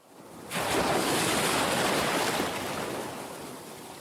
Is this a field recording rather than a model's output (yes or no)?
yes